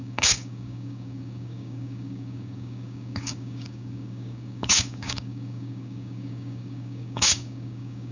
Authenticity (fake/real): fake